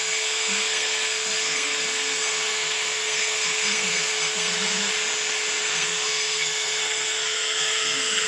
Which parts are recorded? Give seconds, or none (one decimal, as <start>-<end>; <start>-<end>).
4.9-5.6